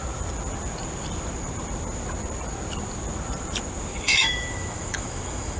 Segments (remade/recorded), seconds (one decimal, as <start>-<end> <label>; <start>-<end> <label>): 0.0-3.9 recorded; 3.9-5.6 remade